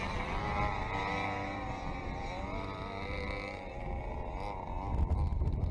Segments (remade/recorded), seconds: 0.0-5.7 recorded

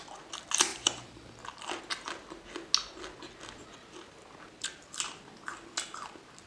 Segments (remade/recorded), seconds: 0.0-0.7 recorded; 0.7-1.3 remade; 1.3-6.5 recorded